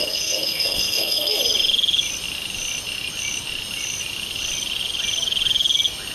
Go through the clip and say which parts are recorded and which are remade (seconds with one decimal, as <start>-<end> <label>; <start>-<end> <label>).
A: 0.0-1.4 remade; 1.4-6.1 recorded